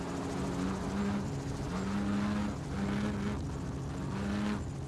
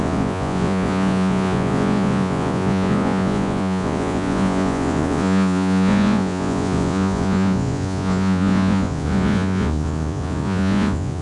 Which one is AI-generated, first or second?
second